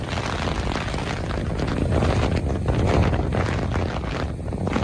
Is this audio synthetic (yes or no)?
no